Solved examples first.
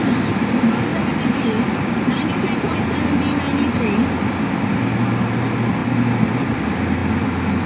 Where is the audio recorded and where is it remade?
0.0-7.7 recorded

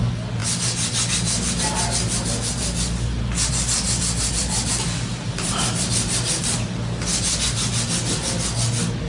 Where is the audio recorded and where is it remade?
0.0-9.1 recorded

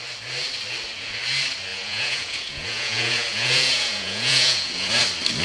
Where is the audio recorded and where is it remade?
0.0-1.7 recorded; 1.7-4.9 remade; 4.9-5.4 recorded

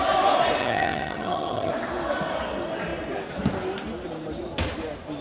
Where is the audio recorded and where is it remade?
0.0-0.6 recorded; 0.6-1.7 remade; 1.7-5.2 recorded

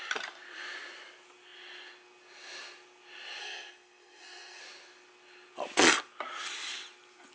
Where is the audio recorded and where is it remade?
0.0-3.4 recorded; 3.4-4.6 remade; 4.6-7.3 recorded

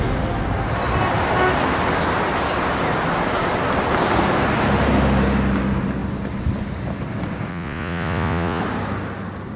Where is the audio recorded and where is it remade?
0.0-7.5 recorded; 7.5-8.6 remade; 8.6-9.6 recorded

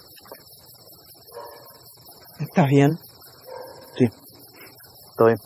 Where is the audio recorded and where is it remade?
0.0-1.9 recorded; 1.9-2.9 remade; 2.9-3.7 recorded; 3.7-4.4 remade; 4.4-5.5 recorded

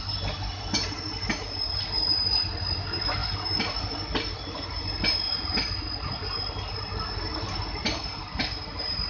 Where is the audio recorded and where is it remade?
0.0-9.1 recorded